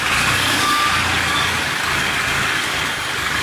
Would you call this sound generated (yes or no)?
yes